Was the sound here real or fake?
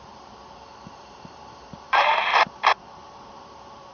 fake